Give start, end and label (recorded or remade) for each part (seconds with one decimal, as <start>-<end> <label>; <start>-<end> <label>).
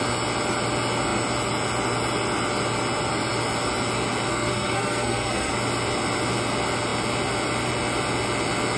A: 0.0-4.3 recorded; 4.3-5.5 remade; 5.5-8.8 recorded